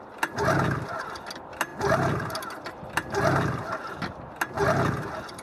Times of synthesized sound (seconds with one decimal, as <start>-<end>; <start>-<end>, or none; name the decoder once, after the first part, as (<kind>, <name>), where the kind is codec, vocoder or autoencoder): none